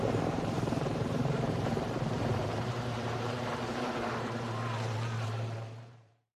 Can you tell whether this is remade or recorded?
remade